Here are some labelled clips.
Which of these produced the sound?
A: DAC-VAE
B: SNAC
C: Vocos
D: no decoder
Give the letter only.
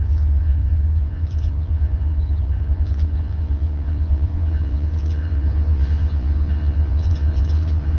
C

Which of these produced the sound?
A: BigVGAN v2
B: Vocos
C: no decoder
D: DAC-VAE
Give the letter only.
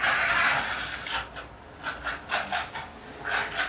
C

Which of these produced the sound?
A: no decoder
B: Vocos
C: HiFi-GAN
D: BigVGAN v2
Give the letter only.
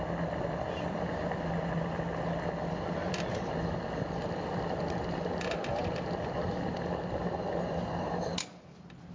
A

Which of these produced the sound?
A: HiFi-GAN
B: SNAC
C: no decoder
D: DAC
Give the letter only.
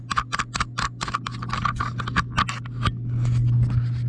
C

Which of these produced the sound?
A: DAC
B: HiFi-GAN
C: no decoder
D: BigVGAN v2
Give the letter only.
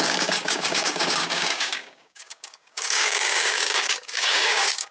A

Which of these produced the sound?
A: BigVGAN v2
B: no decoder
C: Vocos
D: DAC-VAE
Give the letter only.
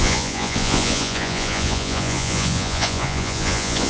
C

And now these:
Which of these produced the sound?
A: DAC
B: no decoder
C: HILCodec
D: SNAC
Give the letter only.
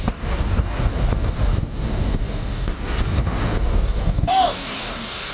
A